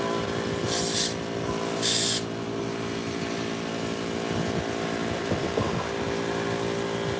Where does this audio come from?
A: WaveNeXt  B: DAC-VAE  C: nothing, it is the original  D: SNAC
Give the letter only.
C